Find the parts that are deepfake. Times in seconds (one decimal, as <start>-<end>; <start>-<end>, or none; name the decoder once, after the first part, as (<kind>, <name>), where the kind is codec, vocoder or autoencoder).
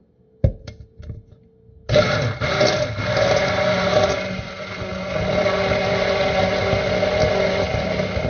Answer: none